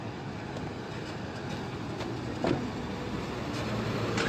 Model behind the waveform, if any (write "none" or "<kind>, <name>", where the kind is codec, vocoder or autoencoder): none